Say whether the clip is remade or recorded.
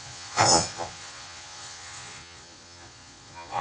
remade